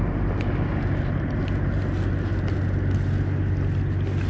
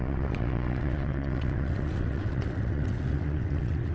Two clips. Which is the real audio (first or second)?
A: first